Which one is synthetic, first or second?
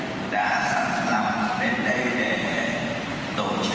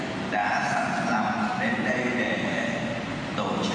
first